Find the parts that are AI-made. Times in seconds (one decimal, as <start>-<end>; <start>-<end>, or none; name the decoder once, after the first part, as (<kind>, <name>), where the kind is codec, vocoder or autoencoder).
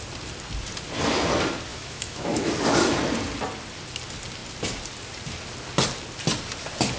1.7-2.5 (autoencoder, DAC-VAE)